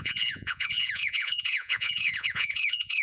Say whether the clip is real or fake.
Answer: fake